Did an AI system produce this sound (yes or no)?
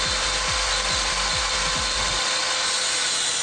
no